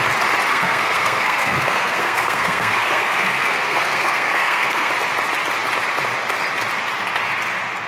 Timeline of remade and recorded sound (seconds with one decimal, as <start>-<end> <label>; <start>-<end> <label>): 0.0-0.5 recorded; 0.5-4.9 remade; 4.9-7.9 recorded